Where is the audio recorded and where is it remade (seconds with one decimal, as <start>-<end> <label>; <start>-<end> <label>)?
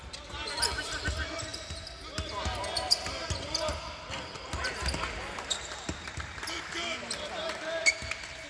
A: 0.0-8.5 recorded